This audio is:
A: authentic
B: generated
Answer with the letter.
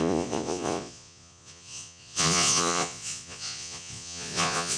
B